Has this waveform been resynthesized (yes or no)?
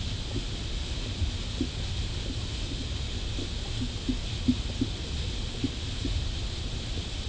no